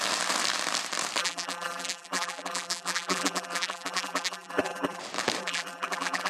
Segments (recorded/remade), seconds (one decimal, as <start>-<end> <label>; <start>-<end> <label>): 0.0-1.2 recorded; 1.2-5.0 remade; 5.0-5.4 recorded; 5.4-6.3 remade